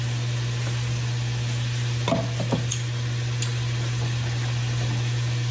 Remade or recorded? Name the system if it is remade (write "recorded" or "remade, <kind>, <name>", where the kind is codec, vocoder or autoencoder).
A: recorded